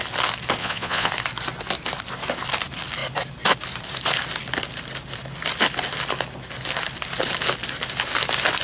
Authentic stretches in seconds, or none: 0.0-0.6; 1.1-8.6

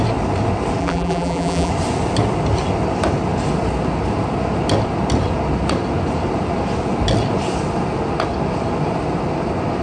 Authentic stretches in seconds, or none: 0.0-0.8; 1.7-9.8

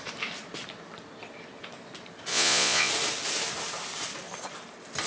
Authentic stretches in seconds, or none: 0.0-2.3; 2.9-5.1

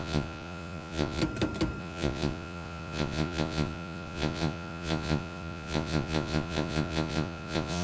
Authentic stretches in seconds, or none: 1.2-1.8

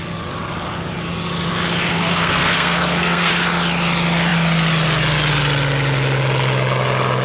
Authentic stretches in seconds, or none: 0.0-1.9; 3.3-7.2

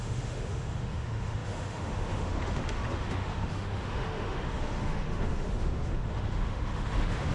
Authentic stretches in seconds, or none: none